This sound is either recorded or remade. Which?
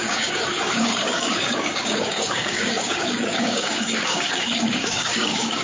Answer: remade